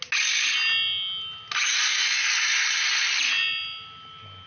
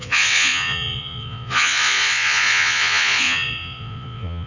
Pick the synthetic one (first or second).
second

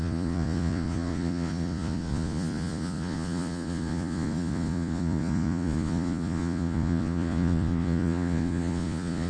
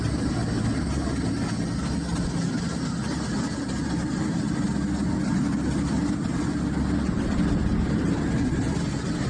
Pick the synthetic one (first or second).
first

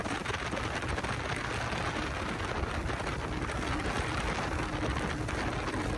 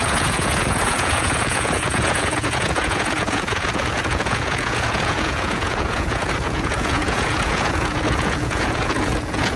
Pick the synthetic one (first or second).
second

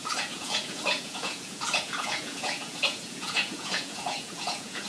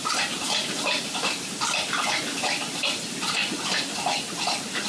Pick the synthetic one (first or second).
first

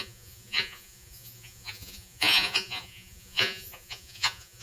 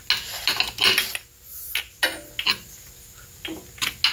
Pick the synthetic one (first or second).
first